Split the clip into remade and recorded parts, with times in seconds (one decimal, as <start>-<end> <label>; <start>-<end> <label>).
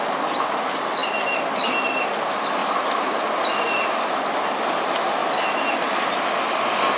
0.0-1.0 recorded; 1.0-1.6 remade; 1.6-2.6 recorded; 2.6-4.1 remade; 4.1-5.2 recorded; 5.2-6.1 remade; 6.1-7.0 recorded